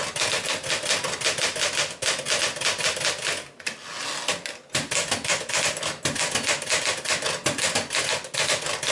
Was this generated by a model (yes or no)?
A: no